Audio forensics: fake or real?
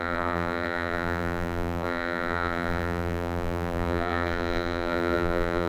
fake